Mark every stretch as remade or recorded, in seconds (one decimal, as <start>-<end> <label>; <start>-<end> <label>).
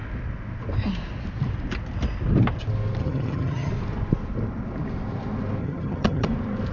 0.0-3.0 recorded; 3.0-3.7 remade; 3.7-5.6 recorded; 5.6-6.3 remade; 6.3-6.7 recorded